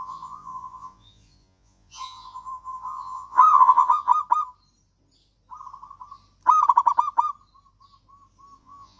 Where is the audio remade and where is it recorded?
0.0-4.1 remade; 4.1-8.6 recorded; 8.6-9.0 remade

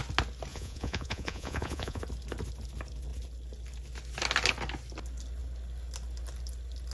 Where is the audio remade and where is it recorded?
0.0-0.5 recorded; 0.5-2.0 remade; 2.0-6.9 recorded

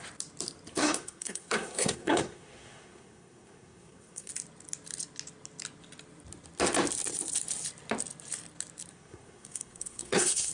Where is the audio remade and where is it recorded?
0.0-0.7 recorded; 0.7-4.3 remade; 4.3-8.9 recorded; 8.9-10.5 remade

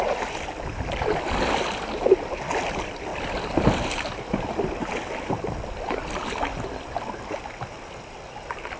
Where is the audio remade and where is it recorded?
0.0-8.8 recorded

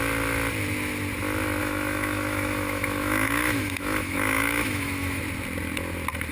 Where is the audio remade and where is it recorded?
0.0-1.6 recorded; 1.6-5.2 remade; 5.2-6.3 recorded

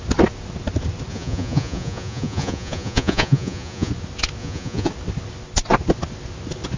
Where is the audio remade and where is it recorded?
0.0-1.1 recorded; 1.1-3.9 remade; 3.9-4.4 recorded; 4.4-4.9 remade; 4.9-6.8 recorded